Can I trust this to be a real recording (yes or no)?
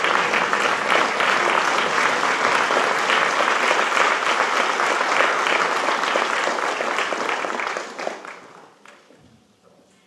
yes